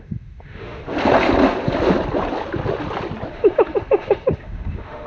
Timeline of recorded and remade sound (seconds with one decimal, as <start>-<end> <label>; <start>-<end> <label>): 0.0-0.8 remade; 0.8-3.3 recorded; 3.3-5.1 remade